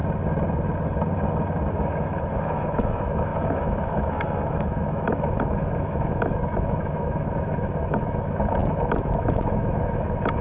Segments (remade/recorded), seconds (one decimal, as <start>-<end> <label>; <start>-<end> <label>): 0.0-1.7 recorded; 1.7-10.4 remade